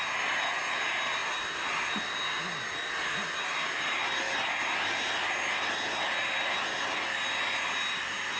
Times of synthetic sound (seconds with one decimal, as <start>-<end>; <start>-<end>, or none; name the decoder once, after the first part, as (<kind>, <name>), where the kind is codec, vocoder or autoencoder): none